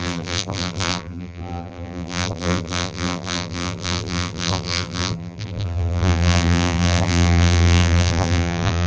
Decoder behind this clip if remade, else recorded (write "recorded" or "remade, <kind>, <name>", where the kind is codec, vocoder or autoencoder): remade, vocoder, BigVGAN v2